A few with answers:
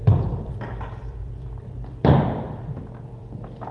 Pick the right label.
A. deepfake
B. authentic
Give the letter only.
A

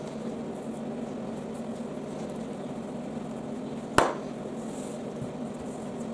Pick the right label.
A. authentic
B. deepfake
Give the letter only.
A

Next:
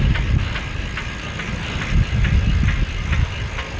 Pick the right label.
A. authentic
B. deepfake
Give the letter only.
A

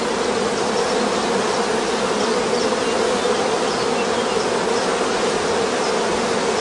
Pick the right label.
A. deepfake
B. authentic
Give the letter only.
B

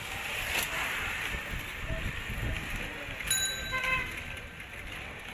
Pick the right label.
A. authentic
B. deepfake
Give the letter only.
A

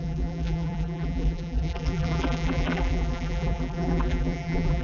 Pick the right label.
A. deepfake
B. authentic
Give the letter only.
A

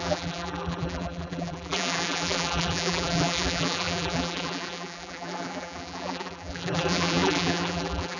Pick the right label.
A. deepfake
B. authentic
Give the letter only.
A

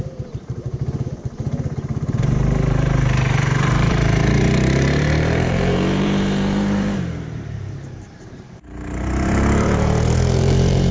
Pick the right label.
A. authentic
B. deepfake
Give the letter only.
B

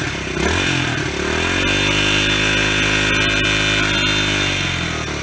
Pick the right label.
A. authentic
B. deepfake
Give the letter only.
A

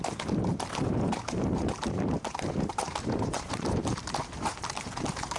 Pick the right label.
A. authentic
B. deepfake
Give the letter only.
B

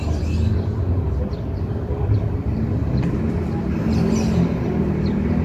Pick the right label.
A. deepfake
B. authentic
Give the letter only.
B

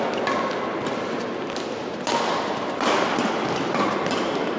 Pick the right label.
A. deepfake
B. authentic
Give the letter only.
B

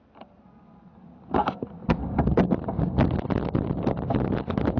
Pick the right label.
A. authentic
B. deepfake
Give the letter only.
A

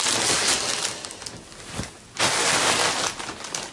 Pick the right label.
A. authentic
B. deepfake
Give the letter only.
A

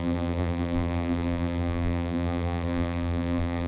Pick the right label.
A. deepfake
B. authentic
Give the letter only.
A